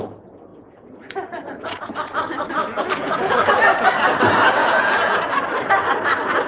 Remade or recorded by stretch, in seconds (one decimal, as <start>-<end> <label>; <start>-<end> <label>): 0.0-0.5 recorded; 0.5-1.9 remade; 1.9-2.6 recorded; 2.6-3.5 remade; 3.5-4.6 recorded; 4.6-5.2 remade; 5.2-6.5 recorded

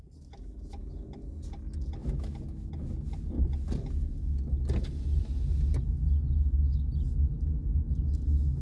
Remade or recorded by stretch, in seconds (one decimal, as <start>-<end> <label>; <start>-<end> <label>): 0.0-8.6 recorded